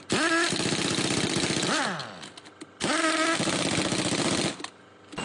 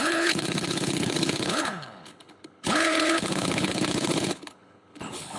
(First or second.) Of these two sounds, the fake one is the second